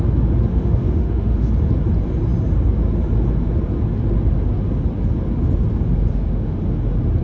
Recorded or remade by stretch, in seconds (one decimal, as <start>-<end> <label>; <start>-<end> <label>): 0.0-0.5 recorded; 0.5-1.5 remade; 1.5-6.1 recorded; 6.1-6.6 remade; 6.6-7.2 recorded